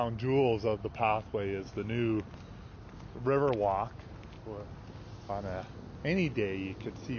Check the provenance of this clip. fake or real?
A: real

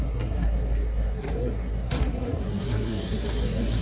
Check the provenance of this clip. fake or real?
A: fake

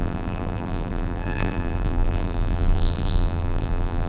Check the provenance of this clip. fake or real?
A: fake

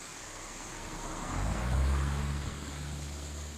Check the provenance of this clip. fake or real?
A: fake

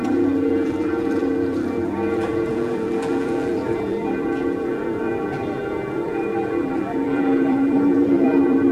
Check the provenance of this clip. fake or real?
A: fake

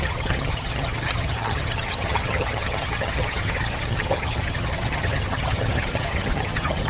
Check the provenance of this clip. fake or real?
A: fake